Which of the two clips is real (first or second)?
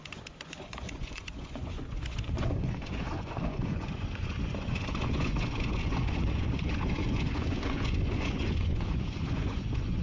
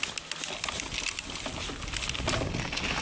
second